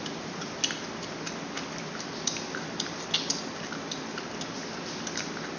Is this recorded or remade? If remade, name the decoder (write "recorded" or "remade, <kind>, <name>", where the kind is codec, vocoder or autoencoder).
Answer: recorded